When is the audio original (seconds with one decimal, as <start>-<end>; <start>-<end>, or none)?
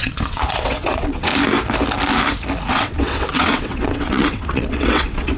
1.3-2.7